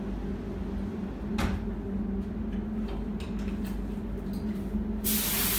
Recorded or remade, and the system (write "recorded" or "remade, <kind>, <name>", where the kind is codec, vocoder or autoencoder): recorded